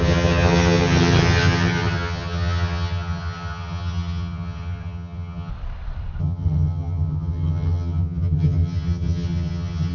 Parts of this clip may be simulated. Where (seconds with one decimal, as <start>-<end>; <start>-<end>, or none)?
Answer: 0.0-5.5; 6.2-9.9